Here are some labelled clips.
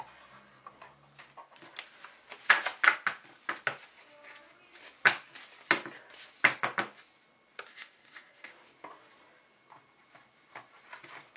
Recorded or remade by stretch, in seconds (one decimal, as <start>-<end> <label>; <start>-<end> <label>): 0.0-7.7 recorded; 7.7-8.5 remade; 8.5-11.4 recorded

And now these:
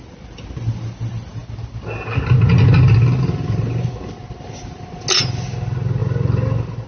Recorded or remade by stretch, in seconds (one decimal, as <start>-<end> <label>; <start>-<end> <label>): 0.0-6.9 recorded

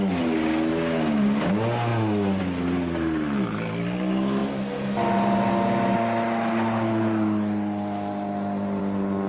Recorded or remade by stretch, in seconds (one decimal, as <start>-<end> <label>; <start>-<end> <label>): 0.0-0.7 recorded; 0.7-1.5 remade; 1.5-9.3 recorded